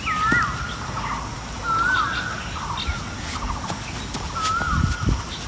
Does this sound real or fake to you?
real